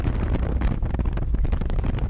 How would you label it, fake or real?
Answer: fake